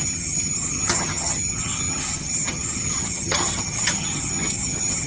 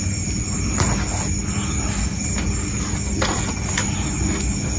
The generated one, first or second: first